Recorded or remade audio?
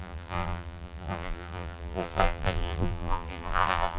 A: remade